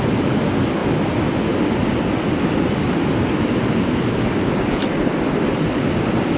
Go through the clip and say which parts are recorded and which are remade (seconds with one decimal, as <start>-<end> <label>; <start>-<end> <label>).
0.0-6.4 recorded